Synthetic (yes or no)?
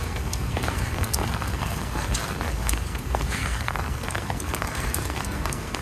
yes